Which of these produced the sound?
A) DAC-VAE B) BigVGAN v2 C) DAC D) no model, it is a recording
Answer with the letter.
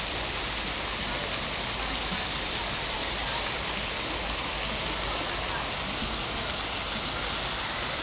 D